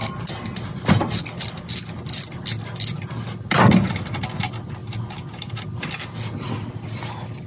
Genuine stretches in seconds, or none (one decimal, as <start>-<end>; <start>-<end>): 0.0-7.5